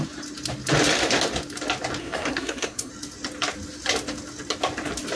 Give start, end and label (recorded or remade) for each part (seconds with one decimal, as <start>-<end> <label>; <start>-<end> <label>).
0.0-2.0 recorded; 2.0-2.9 remade; 2.9-5.2 recorded

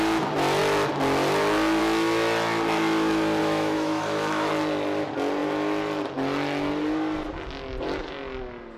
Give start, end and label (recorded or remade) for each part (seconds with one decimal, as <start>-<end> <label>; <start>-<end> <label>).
0.0-3.4 recorded; 3.4-4.5 remade; 4.5-8.8 recorded

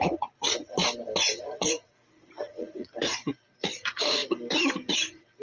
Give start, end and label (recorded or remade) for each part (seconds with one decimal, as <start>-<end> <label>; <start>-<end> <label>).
0.0-0.8 remade; 0.8-1.4 recorded; 1.4-4.2 remade; 4.2-4.9 recorded; 4.9-5.4 remade

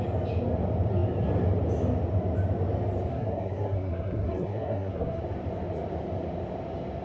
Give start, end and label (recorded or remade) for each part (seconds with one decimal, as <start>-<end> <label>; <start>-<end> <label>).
0.0-3.1 recorded; 3.1-5.2 remade; 5.2-7.0 recorded